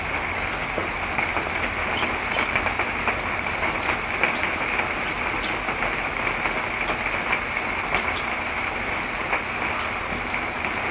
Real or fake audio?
real